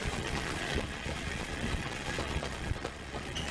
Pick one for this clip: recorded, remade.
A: remade